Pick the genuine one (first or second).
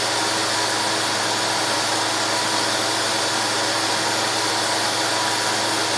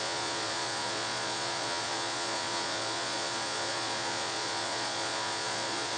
first